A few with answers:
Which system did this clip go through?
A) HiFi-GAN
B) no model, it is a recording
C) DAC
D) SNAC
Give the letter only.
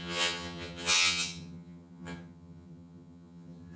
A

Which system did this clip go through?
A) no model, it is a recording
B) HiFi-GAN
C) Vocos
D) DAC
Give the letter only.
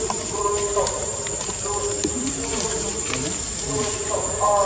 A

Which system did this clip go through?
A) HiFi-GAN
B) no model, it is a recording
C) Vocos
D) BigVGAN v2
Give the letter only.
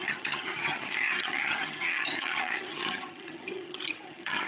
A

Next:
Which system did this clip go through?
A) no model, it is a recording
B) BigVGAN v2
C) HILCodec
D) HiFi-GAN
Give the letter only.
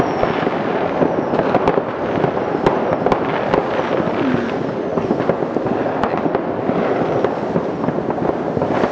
A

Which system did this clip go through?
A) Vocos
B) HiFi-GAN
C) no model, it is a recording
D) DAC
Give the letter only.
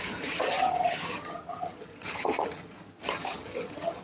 B